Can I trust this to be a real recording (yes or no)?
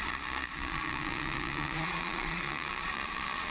no